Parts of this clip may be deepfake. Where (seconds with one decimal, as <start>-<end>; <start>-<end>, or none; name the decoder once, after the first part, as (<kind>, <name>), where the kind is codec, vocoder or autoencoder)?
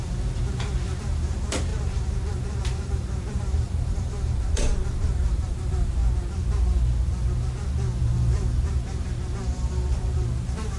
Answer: 0.0-6.0 (vocoder, BigVGAN v2); 8.0-10.8